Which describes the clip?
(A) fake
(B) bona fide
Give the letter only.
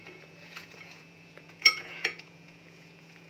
A